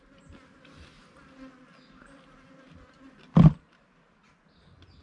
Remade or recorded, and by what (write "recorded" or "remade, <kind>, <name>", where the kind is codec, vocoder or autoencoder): recorded